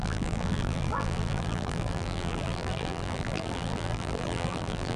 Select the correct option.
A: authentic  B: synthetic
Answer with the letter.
B